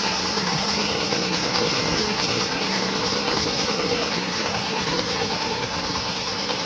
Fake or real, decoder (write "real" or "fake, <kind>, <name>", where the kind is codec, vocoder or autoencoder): fake, codec, SNAC